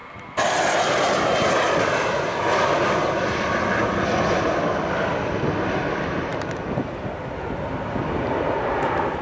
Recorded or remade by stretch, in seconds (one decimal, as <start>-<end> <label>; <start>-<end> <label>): 0.0-9.2 recorded